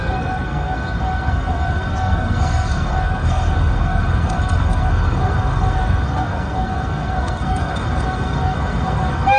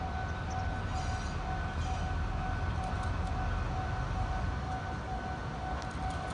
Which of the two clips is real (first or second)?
second